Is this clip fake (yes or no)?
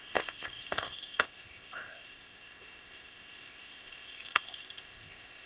yes